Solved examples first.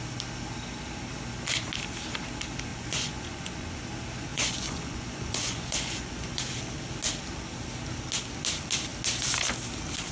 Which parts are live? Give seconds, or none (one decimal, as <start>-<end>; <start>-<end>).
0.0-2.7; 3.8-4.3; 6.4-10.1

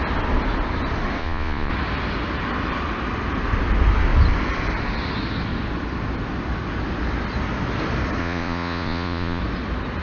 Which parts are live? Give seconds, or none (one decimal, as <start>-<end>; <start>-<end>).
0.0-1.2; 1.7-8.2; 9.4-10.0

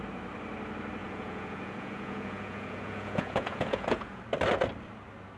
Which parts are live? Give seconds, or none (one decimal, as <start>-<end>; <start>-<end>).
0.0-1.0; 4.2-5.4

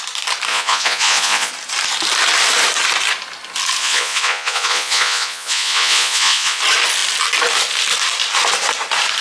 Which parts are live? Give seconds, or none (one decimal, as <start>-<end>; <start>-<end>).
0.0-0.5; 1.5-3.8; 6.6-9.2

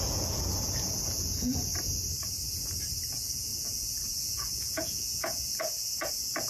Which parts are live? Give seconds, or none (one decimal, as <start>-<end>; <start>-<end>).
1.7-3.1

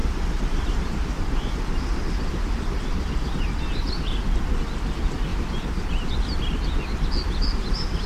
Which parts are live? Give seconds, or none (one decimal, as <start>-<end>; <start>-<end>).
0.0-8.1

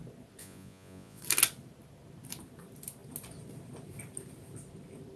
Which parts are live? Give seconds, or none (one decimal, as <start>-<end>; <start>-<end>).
0.0-0.4; 1.2-5.2